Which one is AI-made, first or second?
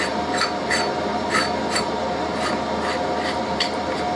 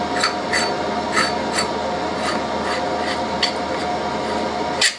first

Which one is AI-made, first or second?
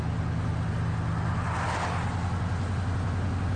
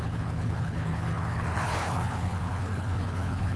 second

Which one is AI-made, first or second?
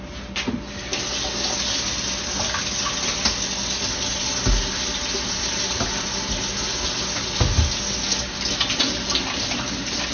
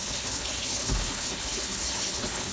second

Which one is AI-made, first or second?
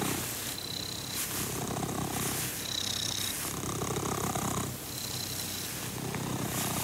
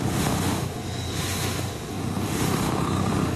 second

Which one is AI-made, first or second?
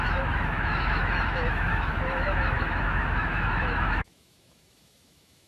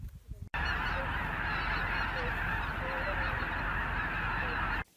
first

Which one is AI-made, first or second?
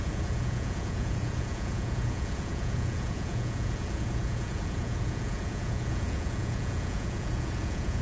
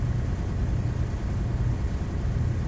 first